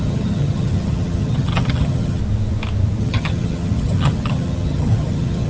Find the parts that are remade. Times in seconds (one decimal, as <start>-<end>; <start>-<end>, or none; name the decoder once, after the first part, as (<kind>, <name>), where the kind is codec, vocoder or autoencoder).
0.0-2.2 (vocoder, HiFi-GAN); 3.0-5.5